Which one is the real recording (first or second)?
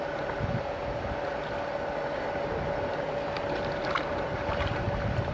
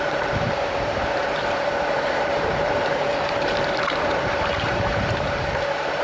first